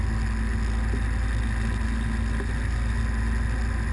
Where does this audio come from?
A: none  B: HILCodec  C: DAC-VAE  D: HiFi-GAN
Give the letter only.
A